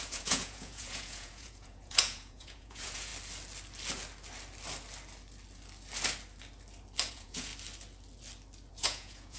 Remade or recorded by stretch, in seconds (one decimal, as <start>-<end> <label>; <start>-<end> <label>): 0.0-3.1 remade; 3.1-7.1 recorded; 7.1-7.5 remade; 7.5-8.7 recorded; 8.7-9.4 remade